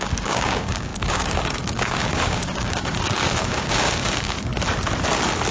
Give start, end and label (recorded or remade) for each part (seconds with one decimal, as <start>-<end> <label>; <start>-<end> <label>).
0.0-4.5 remade; 4.5-5.5 recorded